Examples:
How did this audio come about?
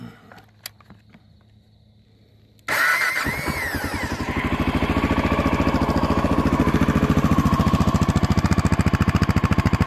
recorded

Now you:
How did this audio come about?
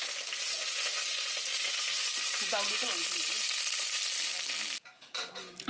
recorded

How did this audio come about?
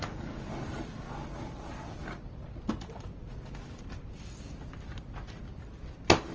recorded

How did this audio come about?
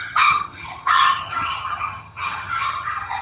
remade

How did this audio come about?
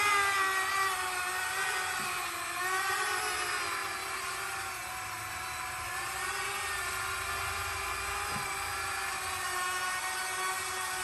recorded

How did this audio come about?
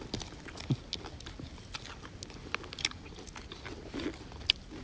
recorded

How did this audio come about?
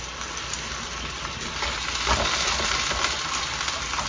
recorded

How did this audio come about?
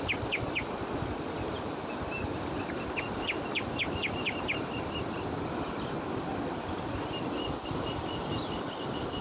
recorded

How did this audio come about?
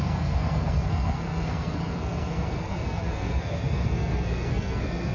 remade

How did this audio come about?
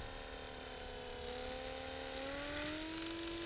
recorded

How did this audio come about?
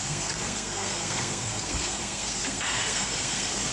remade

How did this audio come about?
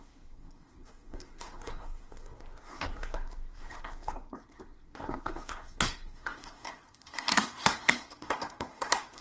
remade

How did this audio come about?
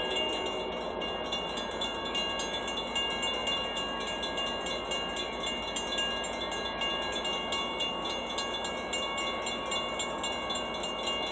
recorded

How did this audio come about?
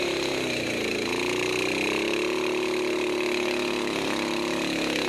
recorded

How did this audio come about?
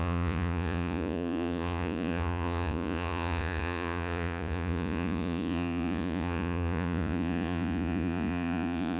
remade